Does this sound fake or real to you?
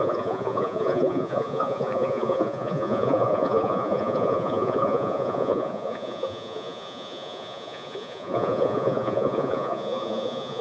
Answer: fake